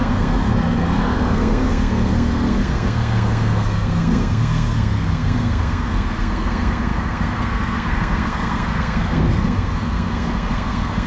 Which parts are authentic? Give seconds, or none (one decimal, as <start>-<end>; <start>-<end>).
none